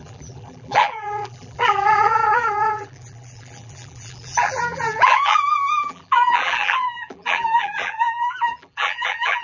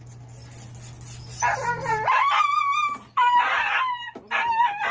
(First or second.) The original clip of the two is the second